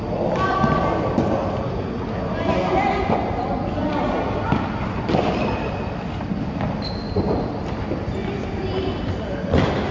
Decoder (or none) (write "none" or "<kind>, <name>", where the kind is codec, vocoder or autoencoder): none